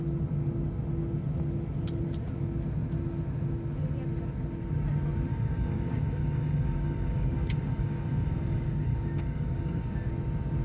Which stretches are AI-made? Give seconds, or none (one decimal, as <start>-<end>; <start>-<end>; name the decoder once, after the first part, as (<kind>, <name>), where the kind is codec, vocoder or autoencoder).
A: 5.3-10.1 (codec, DAC)